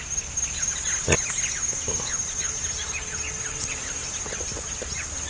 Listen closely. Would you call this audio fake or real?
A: real